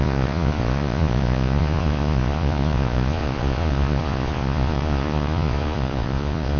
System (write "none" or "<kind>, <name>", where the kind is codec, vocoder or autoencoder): vocoder, Vocos